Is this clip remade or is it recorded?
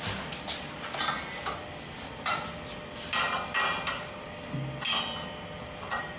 recorded